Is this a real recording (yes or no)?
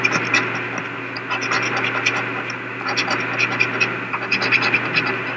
yes